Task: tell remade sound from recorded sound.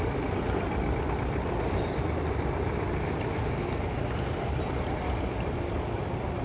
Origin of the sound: recorded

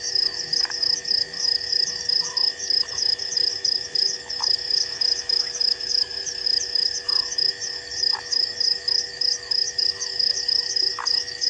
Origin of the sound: remade